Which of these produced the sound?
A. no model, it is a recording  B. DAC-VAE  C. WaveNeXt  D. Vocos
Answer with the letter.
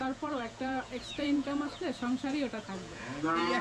D